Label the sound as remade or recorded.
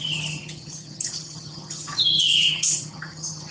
remade